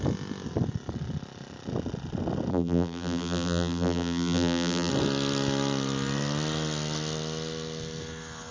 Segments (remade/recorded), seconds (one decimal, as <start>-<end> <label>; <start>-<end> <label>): 0.0-2.5 recorded; 2.5-4.9 remade; 4.9-8.5 recorded